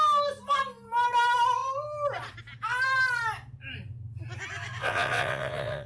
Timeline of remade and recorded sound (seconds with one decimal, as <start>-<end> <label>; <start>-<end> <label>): 0.0-4.8 recorded; 4.8-5.9 remade